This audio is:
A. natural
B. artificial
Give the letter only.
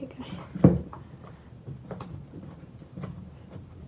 B